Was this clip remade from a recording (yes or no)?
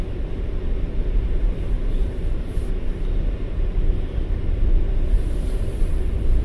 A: yes